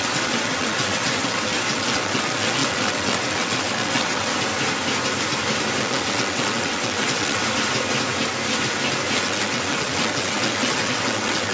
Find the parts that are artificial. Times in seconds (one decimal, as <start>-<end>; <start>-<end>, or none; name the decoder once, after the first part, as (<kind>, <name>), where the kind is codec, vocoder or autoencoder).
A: 0.0-4.3 (vocoder, WaveNeXt); 5.8-7.4; 9.2-11.5